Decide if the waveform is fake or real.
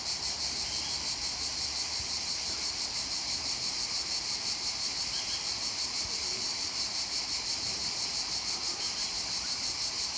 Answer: fake